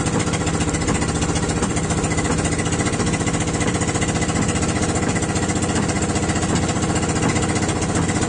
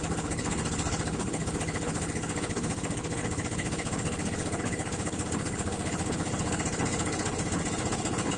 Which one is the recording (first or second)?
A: first